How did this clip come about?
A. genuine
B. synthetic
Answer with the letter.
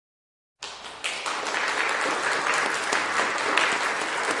A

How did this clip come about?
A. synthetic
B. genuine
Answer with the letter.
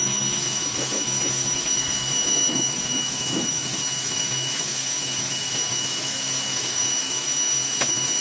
A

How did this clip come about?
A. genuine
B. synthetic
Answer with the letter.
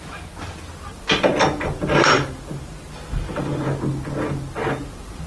A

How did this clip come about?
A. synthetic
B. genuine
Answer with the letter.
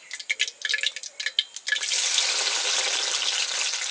B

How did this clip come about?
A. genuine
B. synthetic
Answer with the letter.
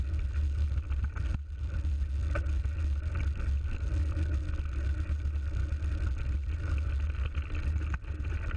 A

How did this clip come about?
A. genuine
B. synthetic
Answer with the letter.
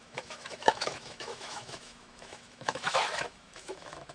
B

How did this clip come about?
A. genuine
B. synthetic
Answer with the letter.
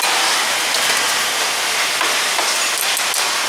A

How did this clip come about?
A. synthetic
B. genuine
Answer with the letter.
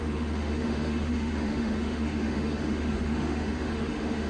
A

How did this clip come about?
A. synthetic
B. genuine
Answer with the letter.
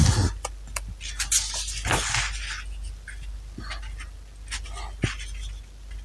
B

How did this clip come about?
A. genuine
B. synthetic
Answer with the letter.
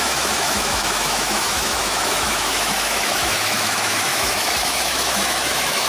B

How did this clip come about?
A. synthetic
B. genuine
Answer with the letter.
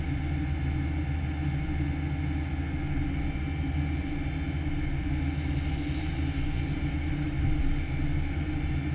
B